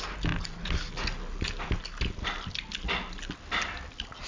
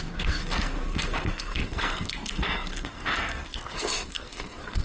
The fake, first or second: second